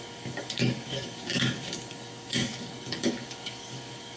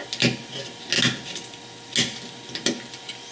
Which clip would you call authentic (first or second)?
second